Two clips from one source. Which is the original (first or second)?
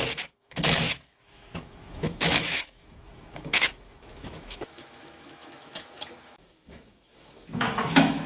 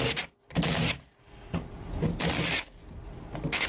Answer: second